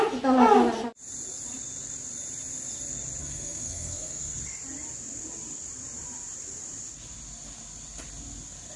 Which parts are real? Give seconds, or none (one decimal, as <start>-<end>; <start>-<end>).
0.0-3.2; 4.4-8.8